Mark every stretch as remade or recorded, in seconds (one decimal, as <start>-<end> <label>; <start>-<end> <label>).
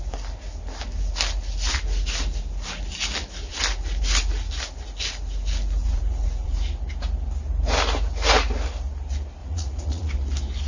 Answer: 0.0-5.8 recorded; 5.8-6.6 remade; 6.6-9.4 recorded; 9.4-10.1 remade; 10.1-10.7 recorded